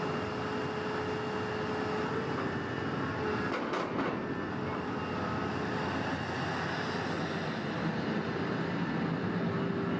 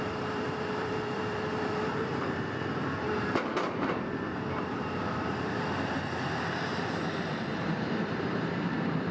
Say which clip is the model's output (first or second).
second